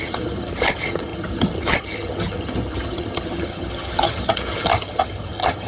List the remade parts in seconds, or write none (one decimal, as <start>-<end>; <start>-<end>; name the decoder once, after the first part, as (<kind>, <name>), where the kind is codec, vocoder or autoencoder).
0.0-5.7 (vocoder, HiFi-GAN)

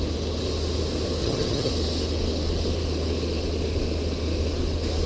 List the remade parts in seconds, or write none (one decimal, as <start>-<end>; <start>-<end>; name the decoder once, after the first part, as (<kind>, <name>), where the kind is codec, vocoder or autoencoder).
1.2-1.7 (vocoder, HiFi-GAN)

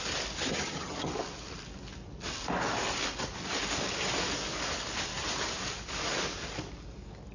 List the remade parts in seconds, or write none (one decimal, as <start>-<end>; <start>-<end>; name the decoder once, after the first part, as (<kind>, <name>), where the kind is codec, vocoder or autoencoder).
0.5-1.1 (vocoder, HiFi-GAN)

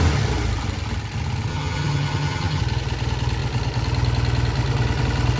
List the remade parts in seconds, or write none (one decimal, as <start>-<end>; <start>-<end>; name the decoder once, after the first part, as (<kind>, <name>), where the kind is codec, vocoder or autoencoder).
1.5-2.6 (vocoder, HiFi-GAN)

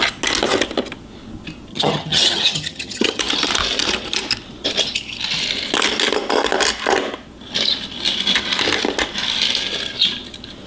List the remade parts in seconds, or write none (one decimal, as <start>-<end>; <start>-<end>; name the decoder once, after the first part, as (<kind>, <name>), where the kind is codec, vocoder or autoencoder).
1.7-3.2 (vocoder, HiFi-GAN)

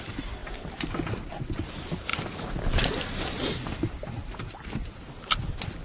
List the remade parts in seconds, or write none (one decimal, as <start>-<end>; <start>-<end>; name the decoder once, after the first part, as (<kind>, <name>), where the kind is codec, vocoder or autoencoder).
none

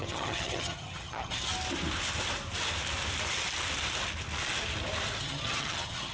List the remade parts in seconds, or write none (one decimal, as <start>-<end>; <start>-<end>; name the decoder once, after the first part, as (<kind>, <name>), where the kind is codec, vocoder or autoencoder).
0.0-1.5 (vocoder, HiFi-GAN); 5.2-6.1

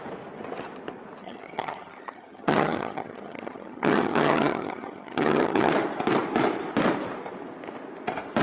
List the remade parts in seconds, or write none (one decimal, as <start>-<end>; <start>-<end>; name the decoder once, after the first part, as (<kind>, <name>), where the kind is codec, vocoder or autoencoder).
1.2-5.7 (vocoder, HiFi-GAN)